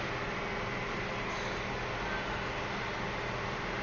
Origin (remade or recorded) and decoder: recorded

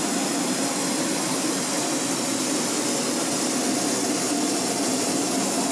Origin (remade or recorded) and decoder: recorded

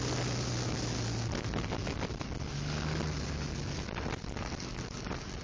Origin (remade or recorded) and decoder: recorded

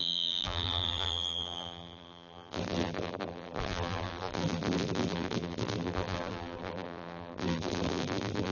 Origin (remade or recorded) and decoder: remade, vocoder, BigVGAN v2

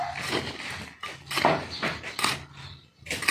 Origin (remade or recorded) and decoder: recorded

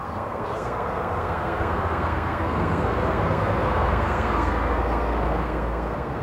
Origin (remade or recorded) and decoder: remade, codec, SNAC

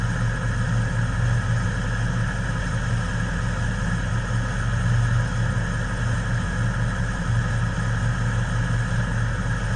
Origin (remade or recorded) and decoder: recorded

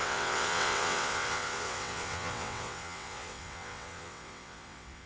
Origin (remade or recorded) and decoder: remade, vocoder, WaveNeXt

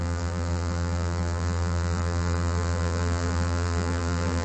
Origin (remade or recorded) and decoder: remade, vocoder, BigVGAN v2